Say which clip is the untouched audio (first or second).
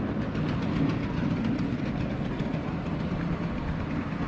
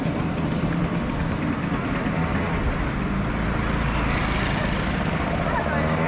second